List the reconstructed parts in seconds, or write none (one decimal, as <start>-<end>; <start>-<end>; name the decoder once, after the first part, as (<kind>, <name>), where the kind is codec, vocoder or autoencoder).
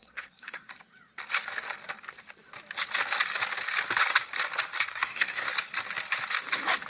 0.0-0.7 (codec, SNAC); 4.9-5.5